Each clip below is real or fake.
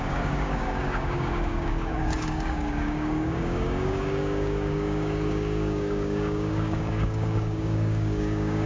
fake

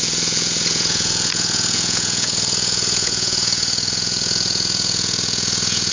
fake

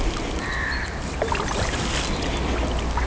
fake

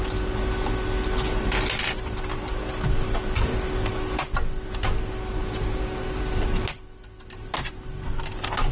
real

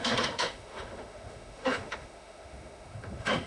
fake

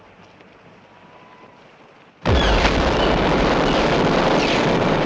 real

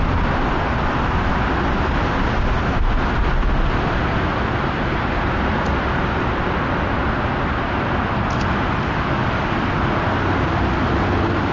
real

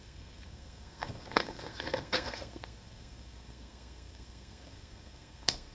fake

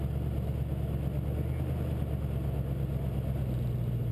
real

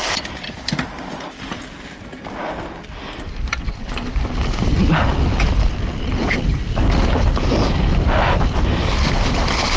real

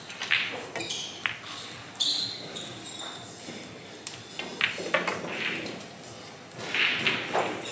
real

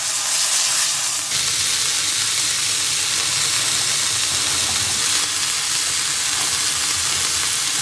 real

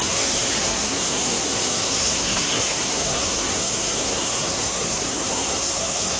fake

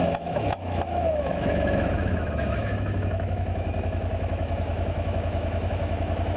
fake